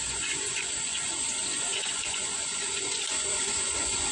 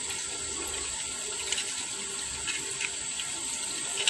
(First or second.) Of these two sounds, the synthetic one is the first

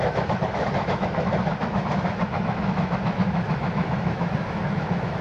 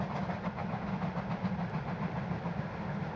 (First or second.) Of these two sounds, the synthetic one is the first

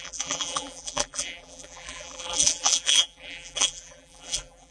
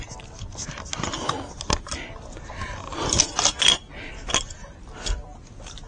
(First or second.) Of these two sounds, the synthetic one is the first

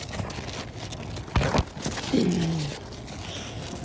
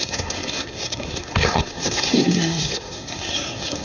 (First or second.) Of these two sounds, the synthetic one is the second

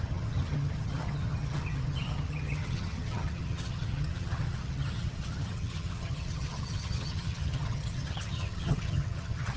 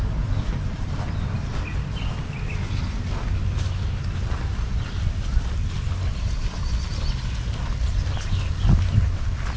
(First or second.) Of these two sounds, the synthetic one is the first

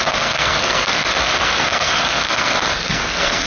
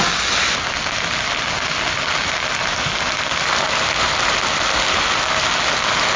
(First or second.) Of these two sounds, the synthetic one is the first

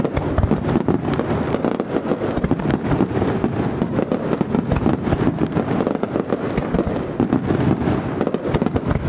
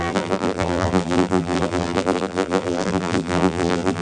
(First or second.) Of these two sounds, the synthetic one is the second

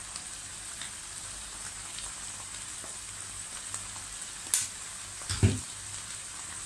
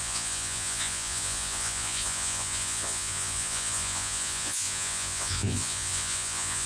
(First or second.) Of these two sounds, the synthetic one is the second